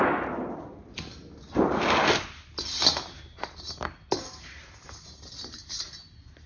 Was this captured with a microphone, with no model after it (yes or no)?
yes